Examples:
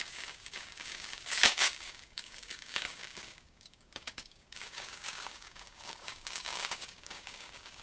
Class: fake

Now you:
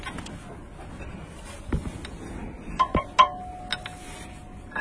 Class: real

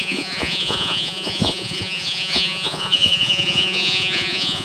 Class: fake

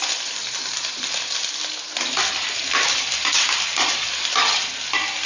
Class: real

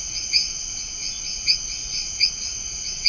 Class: fake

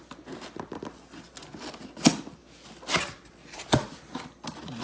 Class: real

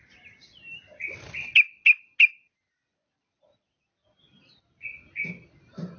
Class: real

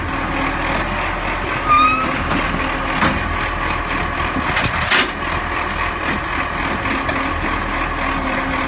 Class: real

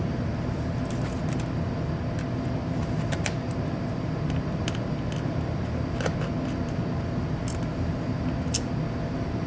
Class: real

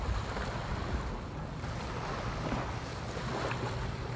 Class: real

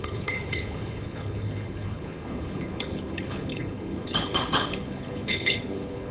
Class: fake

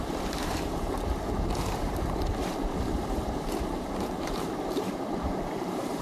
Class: fake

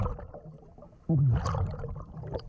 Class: real